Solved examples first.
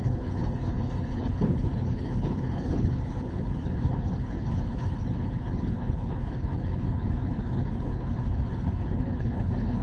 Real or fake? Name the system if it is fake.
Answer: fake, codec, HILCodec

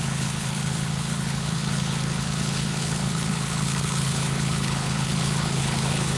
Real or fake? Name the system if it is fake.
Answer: fake, codec, HILCodec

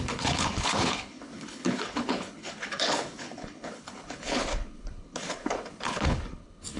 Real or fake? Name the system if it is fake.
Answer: fake, codec, HILCodec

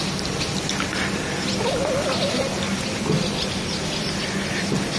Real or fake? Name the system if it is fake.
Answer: real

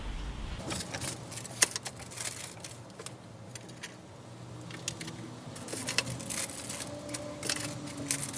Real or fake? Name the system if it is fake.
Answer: real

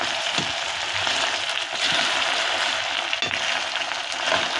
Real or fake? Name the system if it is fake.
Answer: real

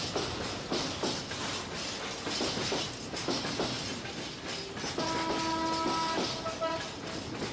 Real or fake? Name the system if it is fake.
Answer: real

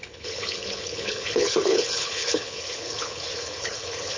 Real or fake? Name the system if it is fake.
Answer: fake, codec, HILCodec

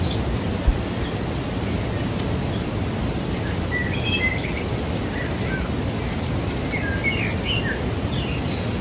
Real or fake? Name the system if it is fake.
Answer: real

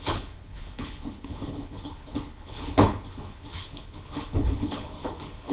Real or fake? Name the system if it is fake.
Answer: fake, codec, HILCodec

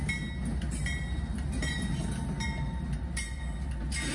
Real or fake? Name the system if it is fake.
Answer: real